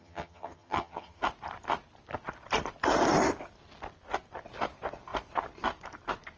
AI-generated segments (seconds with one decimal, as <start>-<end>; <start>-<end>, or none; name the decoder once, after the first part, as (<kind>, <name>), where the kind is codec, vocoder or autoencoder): 0.0-1.2 (vocoder, HiFi-GAN)